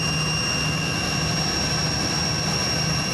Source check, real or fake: real